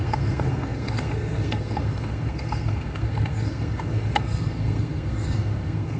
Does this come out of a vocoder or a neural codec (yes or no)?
yes